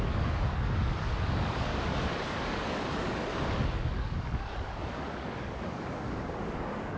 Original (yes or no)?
no